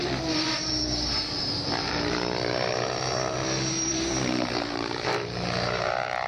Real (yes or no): no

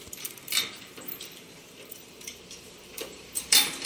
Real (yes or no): no